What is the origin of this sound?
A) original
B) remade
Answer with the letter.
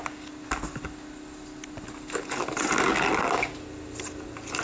A